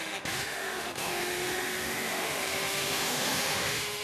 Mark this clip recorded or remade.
remade